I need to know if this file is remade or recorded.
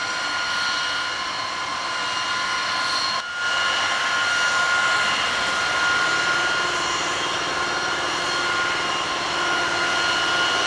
recorded